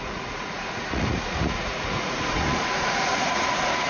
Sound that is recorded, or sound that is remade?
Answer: remade